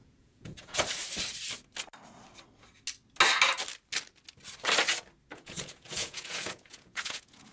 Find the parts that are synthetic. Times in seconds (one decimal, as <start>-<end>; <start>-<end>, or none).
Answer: 0.0-0.8; 5.3-7.5